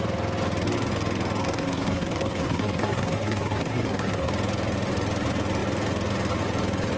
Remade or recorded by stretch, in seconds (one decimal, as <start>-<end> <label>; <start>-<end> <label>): 0.0-1.4 recorded; 1.4-4.3 remade; 4.3-7.0 recorded